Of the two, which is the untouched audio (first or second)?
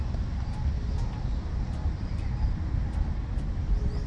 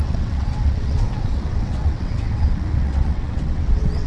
first